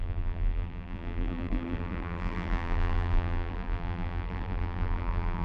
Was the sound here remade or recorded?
remade